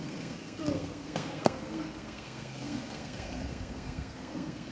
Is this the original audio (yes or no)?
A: no